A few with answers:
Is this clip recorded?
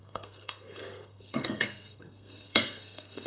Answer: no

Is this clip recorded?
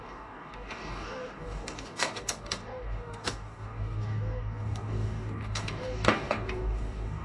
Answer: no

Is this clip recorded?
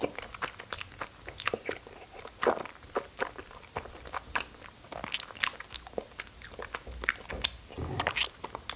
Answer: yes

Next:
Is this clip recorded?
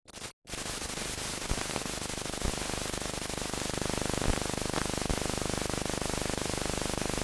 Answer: yes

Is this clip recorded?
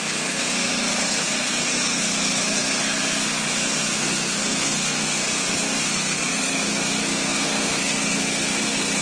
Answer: no